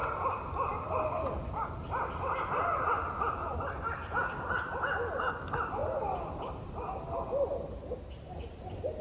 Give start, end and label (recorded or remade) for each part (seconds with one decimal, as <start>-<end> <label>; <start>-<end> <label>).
0.0-9.0 recorded